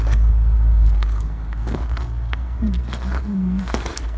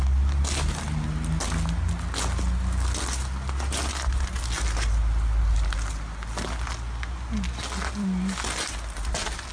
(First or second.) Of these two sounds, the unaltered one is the second